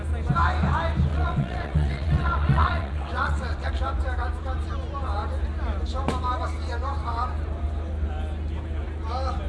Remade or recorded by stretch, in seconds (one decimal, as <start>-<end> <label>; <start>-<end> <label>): 0.0-1.1 recorded; 1.1-3.7 remade; 3.7-9.5 recorded